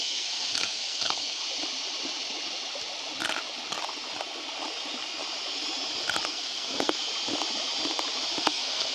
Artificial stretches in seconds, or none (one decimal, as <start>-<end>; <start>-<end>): 0.0-1.4; 6.3-7.1; 8.4-8.9